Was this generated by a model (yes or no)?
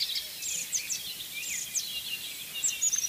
no